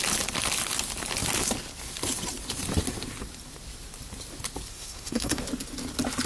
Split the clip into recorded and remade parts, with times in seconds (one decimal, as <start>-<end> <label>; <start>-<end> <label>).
0.0-4.7 recorded; 4.7-5.4 remade; 5.4-6.3 recorded